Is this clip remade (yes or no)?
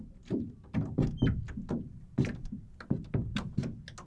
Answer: no